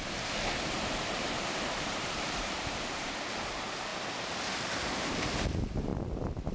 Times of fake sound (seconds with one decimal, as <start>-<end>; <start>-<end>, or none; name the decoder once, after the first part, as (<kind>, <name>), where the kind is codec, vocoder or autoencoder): 0.0-5.9 (vocoder, BigVGAN v2)